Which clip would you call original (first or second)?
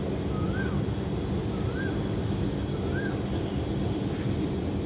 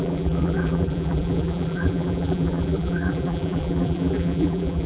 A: first